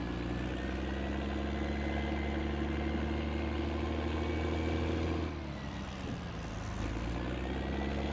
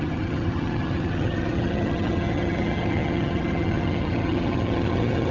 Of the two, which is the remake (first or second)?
second